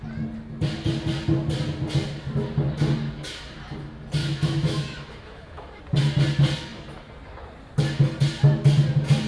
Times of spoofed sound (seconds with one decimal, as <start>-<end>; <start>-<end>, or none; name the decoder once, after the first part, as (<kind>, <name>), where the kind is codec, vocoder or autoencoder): 4.2-5.8 (autoencoder, DAC-VAE)